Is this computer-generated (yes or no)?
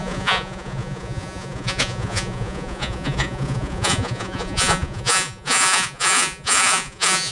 yes